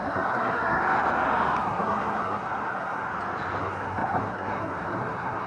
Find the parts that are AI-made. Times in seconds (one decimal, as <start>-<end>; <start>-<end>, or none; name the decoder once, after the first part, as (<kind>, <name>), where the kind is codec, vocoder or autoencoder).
0.0-0.8 (codec, SNAC); 1.6-3.1; 3.6-5.5